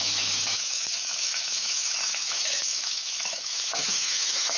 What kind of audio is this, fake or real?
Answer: fake